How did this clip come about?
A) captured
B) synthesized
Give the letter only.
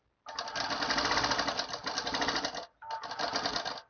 A